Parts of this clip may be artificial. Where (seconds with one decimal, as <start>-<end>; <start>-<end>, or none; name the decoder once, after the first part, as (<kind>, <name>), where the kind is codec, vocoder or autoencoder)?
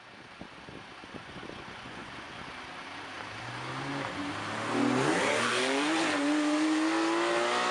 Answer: 1.0-2.4 (vocoder, Vocos)